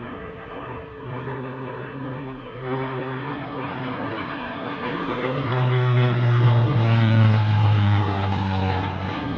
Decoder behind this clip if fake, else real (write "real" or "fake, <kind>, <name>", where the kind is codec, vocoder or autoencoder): fake, codec, SNAC